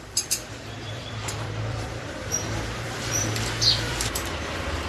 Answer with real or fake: fake